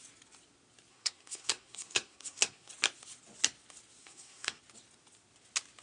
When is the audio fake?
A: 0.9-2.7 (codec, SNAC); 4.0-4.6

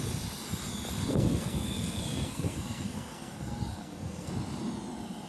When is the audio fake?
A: 1.1-4.3 (codec, SNAC)